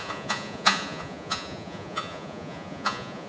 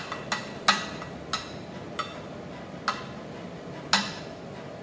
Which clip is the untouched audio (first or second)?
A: second